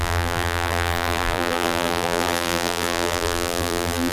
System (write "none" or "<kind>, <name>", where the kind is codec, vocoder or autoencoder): vocoder, BigVGAN v2